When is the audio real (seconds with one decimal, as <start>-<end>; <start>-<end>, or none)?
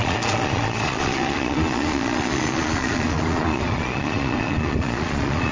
none